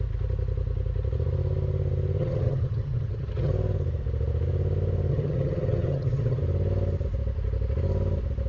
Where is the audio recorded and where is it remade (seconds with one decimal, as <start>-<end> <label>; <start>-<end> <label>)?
0.0-2.2 recorded; 2.2-3.5 remade; 3.5-5.1 recorded; 5.1-6.4 remade; 6.4-8.5 recorded